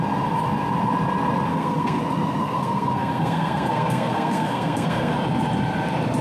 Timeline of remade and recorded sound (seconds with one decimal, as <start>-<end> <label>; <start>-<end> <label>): 0.0-1.5 recorded; 1.5-2.0 remade; 2.0-2.4 recorded; 2.4-5.1 remade; 5.1-6.2 recorded

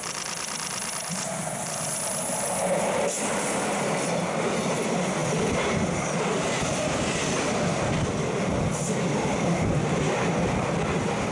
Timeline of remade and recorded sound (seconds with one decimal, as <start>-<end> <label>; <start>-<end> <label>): 0.0-11.3 recorded

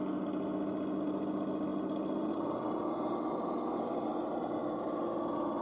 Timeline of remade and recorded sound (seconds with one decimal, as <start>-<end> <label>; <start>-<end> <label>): 0.0-5.6 recorded

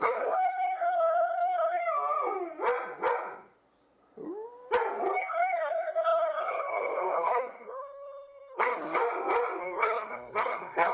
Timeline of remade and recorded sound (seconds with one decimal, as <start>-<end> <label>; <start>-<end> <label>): 0.0-1.8 remade; 1.8-5.2 recorded; 5.2-9.0 remade; 9.0-9.6 recorded; 9.6-10.9 remade

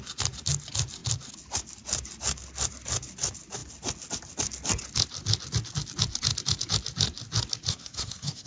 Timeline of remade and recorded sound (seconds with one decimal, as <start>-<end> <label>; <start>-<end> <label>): 0.0-7.7 recorded; 7.7-8.5 remade

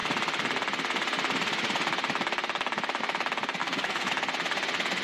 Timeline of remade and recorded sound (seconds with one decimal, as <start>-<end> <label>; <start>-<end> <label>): 0.0-3.6 recorded; 3.6-4.1 remade; 4.1-5.0 recorded